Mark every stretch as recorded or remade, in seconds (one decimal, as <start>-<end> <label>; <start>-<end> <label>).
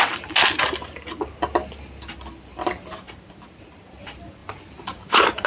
0.0-4.4 recorded; 4.4-5.5 remade